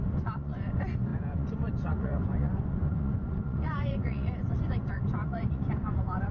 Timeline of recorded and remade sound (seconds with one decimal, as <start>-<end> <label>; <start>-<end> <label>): 0.0-6.3 remade